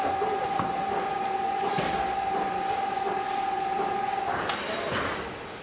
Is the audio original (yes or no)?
yes